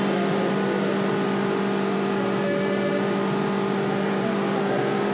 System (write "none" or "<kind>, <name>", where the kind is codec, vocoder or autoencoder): none